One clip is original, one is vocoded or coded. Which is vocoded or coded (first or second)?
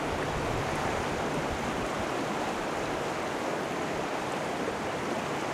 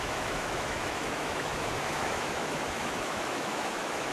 second